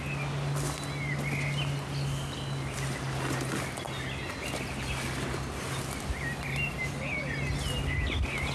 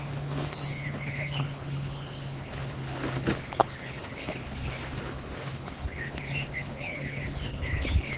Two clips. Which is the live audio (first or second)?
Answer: first